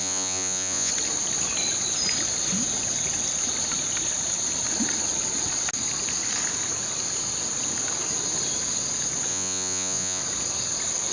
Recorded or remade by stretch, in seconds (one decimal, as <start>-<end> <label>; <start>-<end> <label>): 0.0-0.9 remade; 0.9-9.3 recorded; 9.3-10.2 remade; 10.2-11.1 recorded